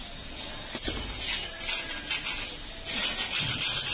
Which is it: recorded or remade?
recorded